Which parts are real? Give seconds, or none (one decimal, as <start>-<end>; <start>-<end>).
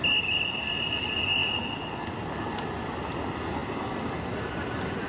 0.0-5.1